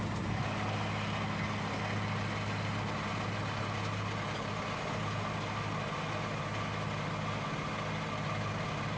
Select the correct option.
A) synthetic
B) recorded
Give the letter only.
B